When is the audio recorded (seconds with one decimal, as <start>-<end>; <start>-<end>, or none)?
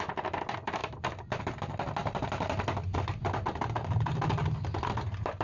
0.0-0.8; 1.4-2.0; 4.4-5.4